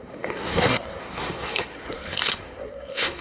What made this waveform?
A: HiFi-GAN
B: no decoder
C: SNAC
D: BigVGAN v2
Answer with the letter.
C